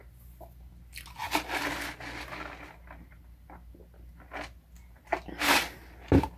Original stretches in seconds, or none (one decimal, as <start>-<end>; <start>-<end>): 0.0-6.4